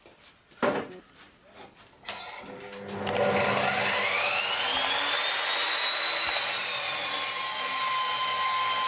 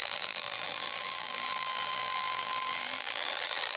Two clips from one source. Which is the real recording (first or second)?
first